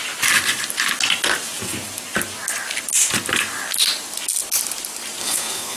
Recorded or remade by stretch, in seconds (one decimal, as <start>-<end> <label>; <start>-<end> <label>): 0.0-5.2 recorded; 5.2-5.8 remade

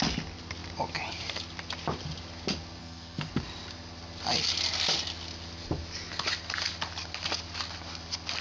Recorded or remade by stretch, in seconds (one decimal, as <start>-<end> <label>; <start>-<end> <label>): 0.0-2.8 recorded; 2.8-3.3 remade; 3.3-8.4 recorded

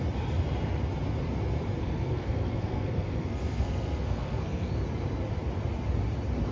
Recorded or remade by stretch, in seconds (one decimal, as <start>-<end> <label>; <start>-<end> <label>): 0.0-1.8 recorded; 1.8-4.7 remade; 4.7-6.5 recorded

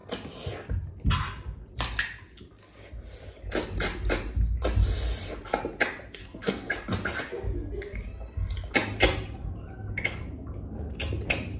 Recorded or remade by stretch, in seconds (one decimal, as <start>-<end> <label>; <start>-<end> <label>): 0.0-6.2 recorded; 6.2-6.7 remade; 6.7-11.6 recorded